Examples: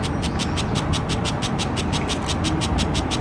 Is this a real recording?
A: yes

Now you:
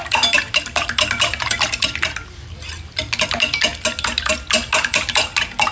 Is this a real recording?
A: yes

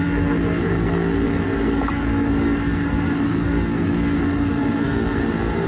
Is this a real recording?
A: no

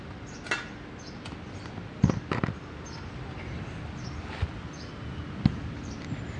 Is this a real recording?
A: yes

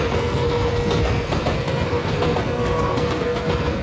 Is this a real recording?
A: no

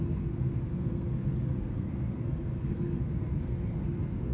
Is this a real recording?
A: no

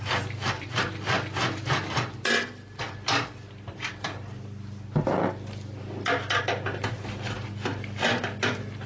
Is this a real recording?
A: yes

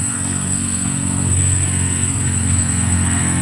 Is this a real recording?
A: no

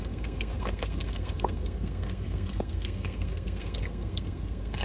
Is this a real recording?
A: no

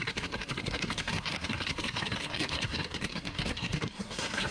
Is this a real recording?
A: no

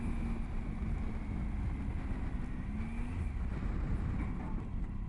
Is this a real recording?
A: yes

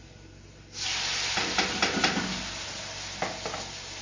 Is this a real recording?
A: yes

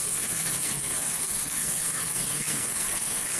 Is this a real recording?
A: no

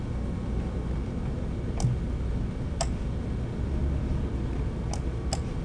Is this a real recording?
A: yes